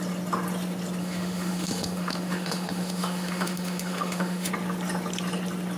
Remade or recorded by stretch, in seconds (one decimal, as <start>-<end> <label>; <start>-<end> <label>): 0.0-1.0 recorded; 1.0-4.5 remade; 4.5-5.8 recorded